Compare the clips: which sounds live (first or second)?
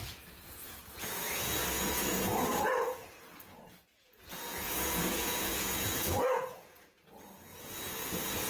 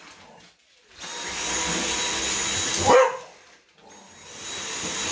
second